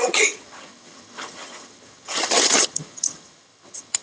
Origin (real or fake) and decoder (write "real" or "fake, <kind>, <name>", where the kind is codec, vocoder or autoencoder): fake, vocoder, HiFi-GAN